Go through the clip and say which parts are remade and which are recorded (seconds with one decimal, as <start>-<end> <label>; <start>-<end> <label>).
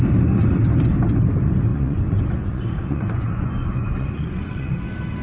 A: 0.0-1.7 recorded; 1.7-4.8 remade; 4.8-5.2 recorded